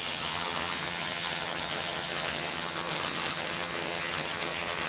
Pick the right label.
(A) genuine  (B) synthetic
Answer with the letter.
B